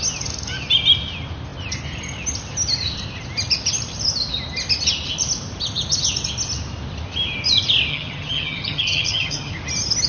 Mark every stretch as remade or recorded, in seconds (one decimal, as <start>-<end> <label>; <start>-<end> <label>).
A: 0.0-7.9 recorded; 7.9-9.5 remade; 9.5-10.1 recorded